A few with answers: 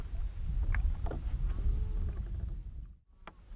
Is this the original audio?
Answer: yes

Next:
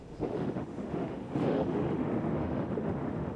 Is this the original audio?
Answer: no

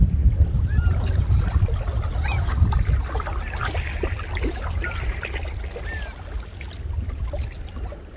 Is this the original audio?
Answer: yes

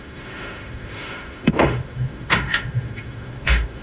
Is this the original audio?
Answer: no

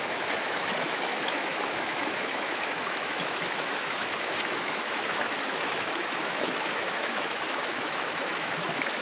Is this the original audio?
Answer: no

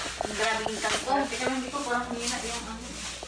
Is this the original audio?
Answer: yes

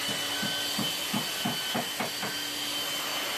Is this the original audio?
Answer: yes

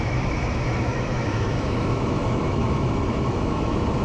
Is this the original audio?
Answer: no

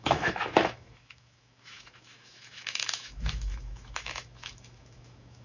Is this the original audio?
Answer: no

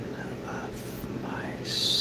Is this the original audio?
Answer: yes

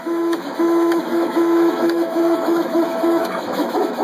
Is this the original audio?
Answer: no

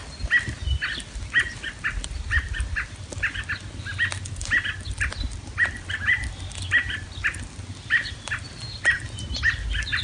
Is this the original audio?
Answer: yes